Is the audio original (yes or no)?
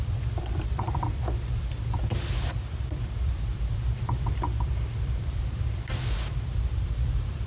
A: no